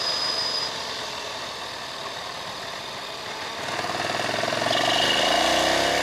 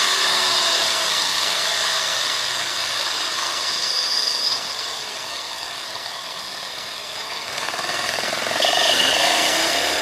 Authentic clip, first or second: first